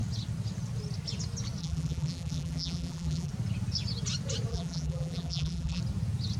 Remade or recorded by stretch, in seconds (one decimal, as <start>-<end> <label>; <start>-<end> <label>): 0.0-1.6 recorded; 1.6-3.3 remade; 3.3-4.5 recorded; 4.5-5.8 remade; 5.8-6.4 recorded